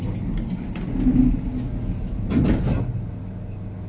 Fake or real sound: real